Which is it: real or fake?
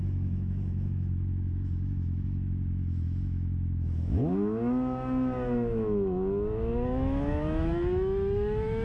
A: fake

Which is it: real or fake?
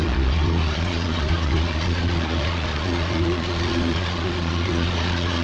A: fake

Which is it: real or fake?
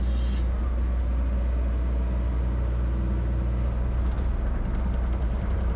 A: real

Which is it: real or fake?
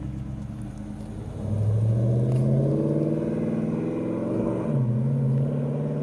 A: real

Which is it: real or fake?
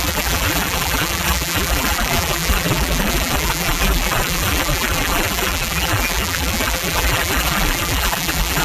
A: fake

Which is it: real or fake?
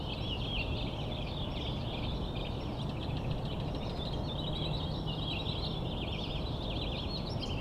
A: real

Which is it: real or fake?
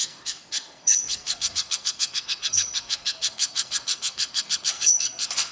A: fake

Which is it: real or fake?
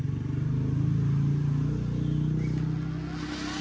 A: real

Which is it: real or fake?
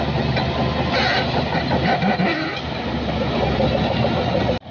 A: real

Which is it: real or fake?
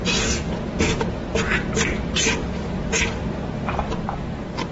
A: real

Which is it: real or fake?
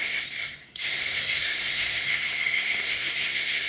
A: fake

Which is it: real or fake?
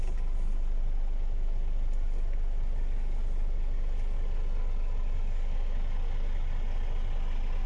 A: real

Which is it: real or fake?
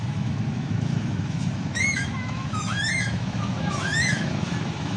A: fake